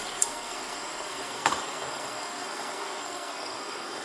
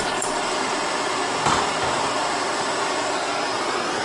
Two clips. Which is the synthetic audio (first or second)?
first